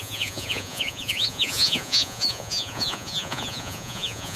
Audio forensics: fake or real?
fake